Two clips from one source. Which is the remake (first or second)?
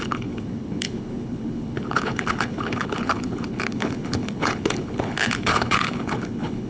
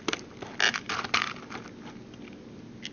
first